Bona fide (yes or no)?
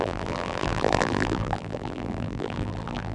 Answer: no